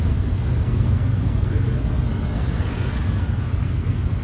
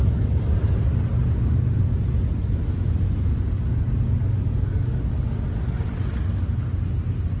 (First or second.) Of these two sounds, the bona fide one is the second